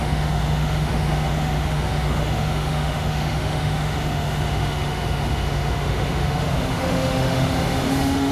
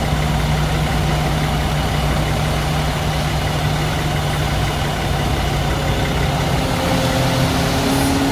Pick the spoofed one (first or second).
first